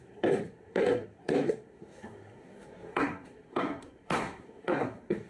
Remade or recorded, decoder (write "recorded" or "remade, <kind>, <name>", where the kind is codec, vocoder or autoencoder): remade, codec, SNAC